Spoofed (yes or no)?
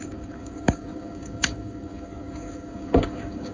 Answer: yes